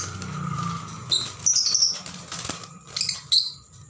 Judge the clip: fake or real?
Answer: real